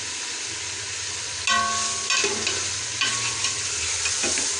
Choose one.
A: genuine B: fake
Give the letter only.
A